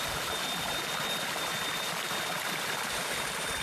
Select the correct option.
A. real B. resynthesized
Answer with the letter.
A